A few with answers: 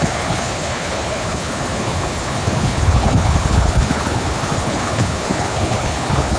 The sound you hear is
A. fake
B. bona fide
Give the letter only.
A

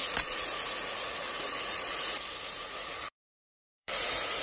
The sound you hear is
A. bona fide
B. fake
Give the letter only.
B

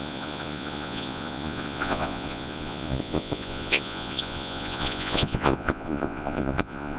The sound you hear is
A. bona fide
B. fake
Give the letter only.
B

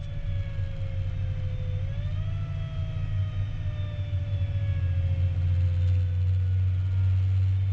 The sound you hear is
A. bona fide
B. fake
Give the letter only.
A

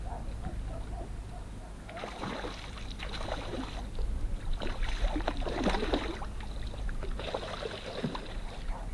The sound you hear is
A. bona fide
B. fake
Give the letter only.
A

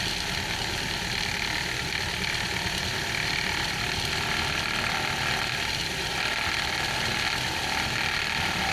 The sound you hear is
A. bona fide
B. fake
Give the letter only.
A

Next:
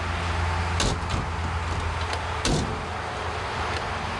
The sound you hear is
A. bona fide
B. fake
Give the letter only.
A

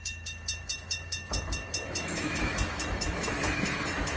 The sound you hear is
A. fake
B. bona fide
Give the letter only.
A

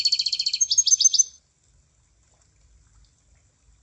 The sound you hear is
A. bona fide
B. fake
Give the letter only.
A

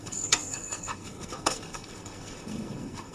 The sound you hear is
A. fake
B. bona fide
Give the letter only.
A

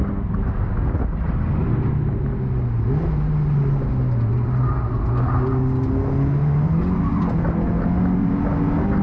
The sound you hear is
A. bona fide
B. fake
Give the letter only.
A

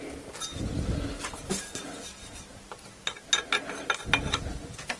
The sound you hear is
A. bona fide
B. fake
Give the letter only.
A